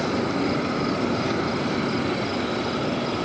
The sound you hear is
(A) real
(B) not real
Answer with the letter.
A